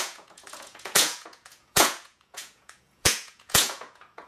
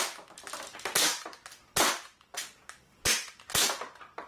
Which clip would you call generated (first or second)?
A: first